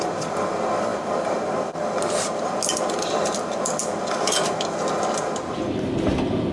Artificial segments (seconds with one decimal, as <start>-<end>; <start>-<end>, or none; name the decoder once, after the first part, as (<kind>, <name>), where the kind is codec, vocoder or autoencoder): none